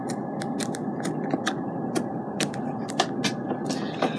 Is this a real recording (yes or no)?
yes